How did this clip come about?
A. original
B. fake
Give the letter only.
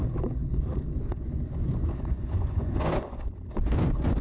B